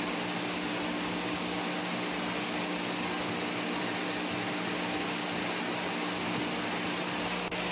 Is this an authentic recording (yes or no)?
yes